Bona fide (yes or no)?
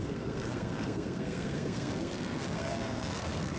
no